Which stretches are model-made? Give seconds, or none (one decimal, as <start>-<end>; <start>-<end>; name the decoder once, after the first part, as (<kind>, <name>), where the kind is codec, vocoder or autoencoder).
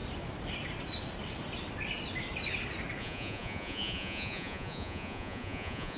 3.0-6.0 (vocoder, Vocos)